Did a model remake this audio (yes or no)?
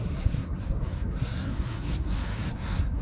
yes